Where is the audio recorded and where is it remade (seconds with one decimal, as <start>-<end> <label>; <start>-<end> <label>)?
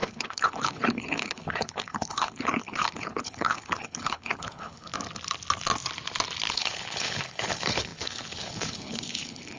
0.0-4.9 remade; 4.9-6.5 recorded; 6.5-9.6 remade